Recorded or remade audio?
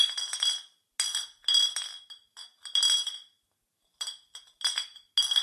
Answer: recorded